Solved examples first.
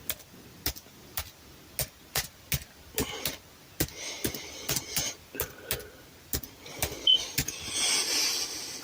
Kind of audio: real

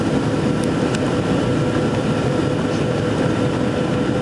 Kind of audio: fake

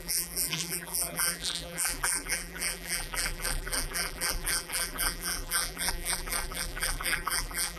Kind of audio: fake